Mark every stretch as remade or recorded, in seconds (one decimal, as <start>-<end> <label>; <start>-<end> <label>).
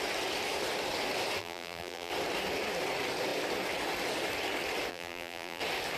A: 0.0-1.4 recorded; 1.4-2.1 remade; 2.1-4.9 recorded; 4.9-5.6 remade; 5.6-6.0 recorded